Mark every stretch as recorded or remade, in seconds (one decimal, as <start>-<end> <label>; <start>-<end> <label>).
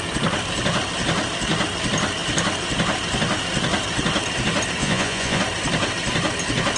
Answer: 0.0-4.8 recorded; 4.8-5.4 remade; 5.4-6.8 recorded